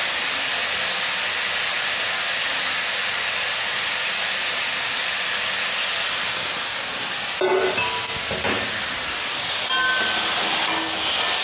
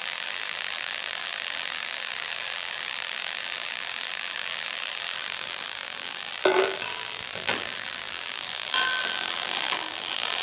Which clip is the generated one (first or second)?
second